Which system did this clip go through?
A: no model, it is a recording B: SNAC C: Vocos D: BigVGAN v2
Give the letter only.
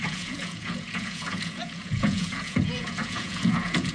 C